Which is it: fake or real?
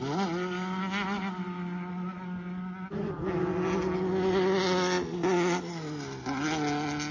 real